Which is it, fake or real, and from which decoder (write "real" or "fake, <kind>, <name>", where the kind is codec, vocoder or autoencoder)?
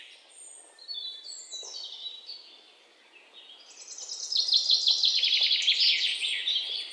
real